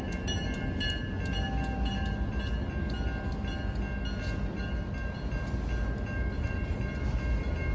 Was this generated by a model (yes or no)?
no